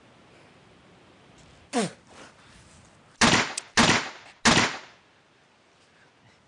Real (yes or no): yes